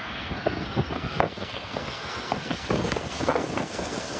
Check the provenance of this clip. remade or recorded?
remade